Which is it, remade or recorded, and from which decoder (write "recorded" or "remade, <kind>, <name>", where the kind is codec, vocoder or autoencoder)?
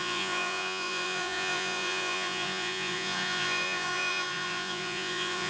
remade, vocoder, Vocos